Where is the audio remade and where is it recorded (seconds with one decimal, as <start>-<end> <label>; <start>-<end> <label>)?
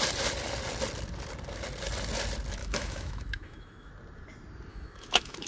0.0-2.6 recorded; 2.6-3.9 remade; 3.9-4.7 recorded; 4.7-5.5 remade